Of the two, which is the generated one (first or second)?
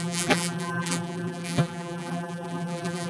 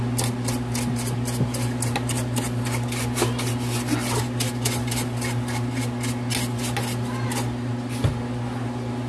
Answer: first